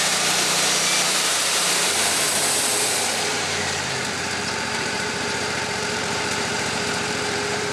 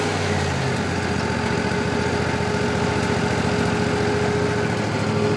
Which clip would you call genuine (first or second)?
second